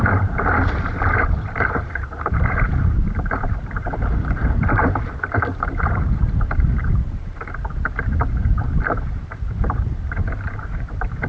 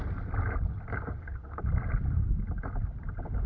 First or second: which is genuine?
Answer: second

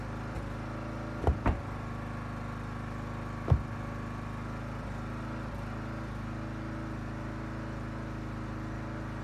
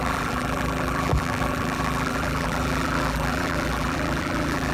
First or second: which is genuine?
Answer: first